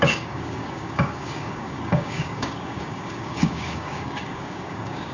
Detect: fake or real fake